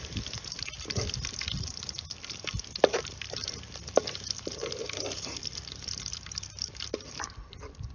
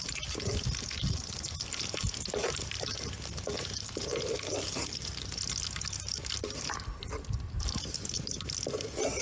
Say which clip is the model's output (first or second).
first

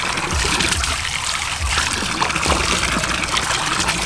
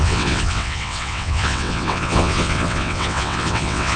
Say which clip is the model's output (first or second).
second